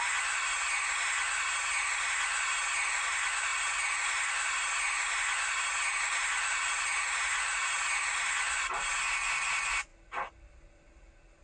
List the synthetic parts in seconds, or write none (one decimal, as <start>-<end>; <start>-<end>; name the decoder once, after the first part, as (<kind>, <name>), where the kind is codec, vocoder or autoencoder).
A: 3.5-4.3 (vocoder, BigVGAN v2); 5.9-7.9